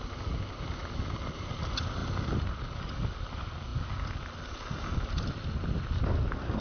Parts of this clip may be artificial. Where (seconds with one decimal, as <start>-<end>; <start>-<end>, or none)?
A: none